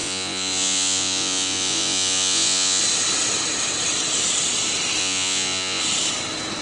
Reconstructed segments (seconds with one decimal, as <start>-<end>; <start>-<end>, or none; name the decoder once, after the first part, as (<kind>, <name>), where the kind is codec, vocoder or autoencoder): 0.0-2.8 (vocoder, Vocos); 5.0-5.8